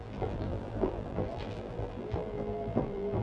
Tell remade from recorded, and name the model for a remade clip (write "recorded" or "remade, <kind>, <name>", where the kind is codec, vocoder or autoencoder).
remade, vocoder, BigVGAN v2